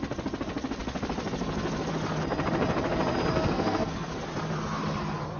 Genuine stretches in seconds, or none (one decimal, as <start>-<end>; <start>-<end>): 0.0-3.3; 4.1-5.4